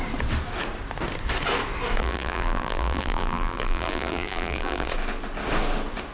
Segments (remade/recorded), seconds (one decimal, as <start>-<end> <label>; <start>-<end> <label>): 0.0-2.0 recorded; 2.0-4.9 remade; 4.9-6.1 recorded